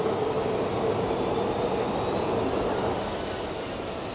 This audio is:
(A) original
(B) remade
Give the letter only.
A